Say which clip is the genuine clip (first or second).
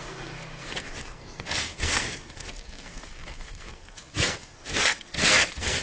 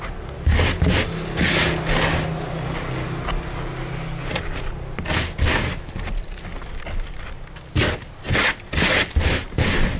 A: second